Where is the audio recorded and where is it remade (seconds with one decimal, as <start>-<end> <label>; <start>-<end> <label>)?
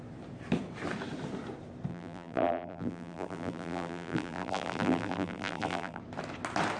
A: 0.0-1.9 recorded; 1.9-6.0 remade; 6.0-6.8 recorded